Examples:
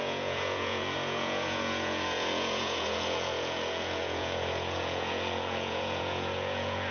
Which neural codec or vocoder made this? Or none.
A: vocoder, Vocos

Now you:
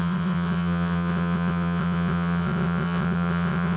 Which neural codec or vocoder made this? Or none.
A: vocoder, WaveNeXt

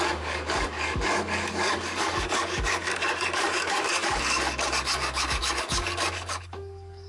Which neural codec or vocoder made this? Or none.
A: codec, DAC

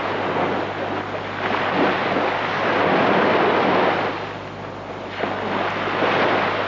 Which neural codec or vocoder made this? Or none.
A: none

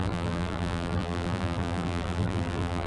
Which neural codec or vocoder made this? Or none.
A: vocoder, BigVGAN v2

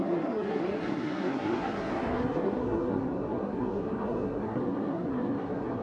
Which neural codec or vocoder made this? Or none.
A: codec, SNAC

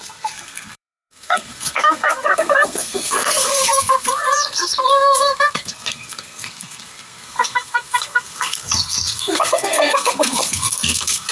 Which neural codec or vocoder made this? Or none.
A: codec, SNAC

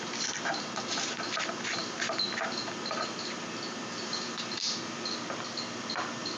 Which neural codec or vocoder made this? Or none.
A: none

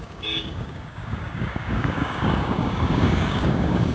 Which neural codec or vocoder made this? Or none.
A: codec, DAC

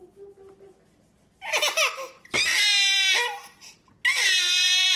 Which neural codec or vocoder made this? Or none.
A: none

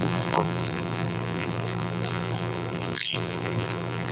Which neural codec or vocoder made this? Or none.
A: vocoder, BigVGAN v2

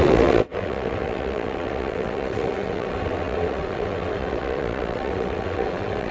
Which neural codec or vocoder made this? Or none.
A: vocoder, WaveNeXt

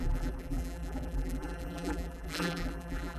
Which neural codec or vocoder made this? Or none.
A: vocoder, BigVGAN v2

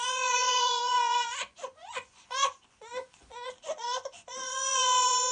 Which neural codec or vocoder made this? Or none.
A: vocoder, Vocos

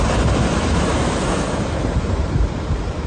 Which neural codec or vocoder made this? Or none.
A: none